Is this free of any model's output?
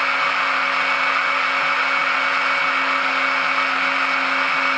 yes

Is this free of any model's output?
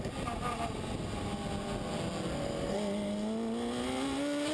yes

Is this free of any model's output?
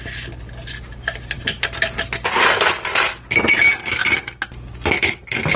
yes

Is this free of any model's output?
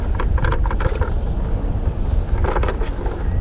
yes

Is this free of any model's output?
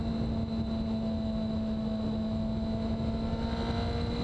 yes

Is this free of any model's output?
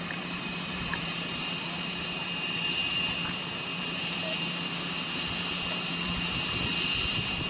no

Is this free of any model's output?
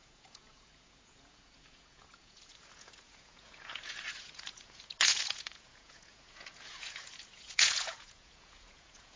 no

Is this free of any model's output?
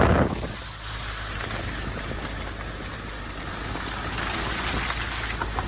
yes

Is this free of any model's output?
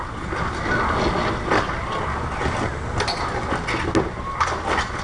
yes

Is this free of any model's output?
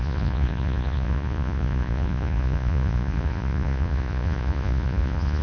no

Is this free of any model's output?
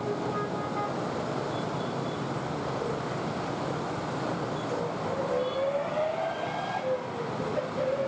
yes